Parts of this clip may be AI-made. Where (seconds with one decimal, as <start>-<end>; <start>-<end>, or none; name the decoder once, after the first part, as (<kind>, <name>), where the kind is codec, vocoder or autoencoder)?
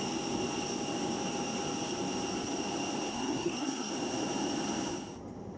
3.1-3.9 (codec, SNAC)